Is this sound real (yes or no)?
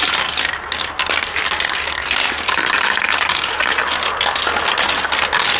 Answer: yes